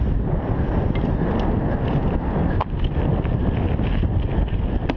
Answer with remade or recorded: recorded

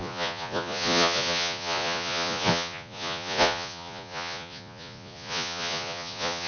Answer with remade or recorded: remade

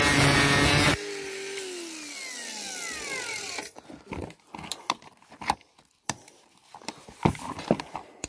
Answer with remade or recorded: recorded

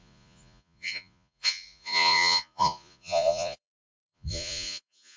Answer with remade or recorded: remade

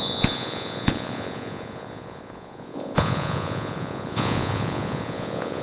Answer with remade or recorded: remade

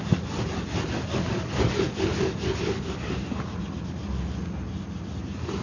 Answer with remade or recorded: recorded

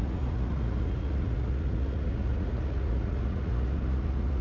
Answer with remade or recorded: remade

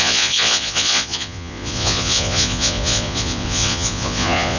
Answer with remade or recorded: remade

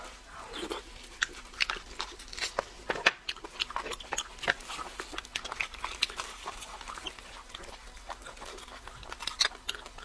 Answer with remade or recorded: recorded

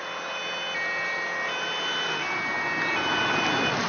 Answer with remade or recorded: recorded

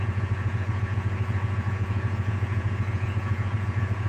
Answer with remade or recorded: remade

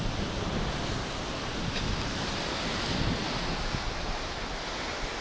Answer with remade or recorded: recorded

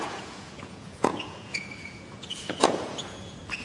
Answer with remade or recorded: remade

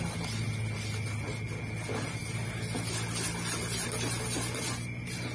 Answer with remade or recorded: recorded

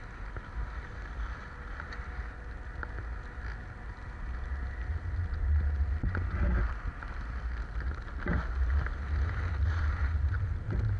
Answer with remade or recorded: recorded